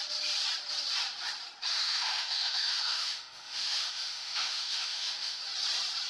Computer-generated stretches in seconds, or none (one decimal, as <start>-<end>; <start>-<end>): 1.7-5.4